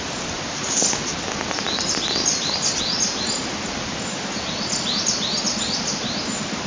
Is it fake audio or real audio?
real